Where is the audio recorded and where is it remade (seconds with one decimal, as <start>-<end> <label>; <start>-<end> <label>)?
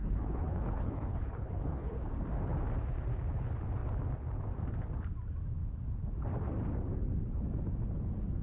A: 0.0-2.1 remade; 2.1-8.4 recorded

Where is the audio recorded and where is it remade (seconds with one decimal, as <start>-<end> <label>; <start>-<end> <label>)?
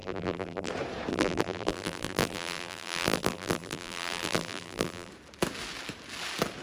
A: 0.0-0.7 remade; 0.7-1.1 recorded; 1.1-5.1 remade; 5.1-6.6 recorded